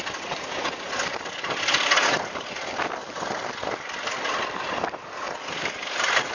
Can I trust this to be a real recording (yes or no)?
yes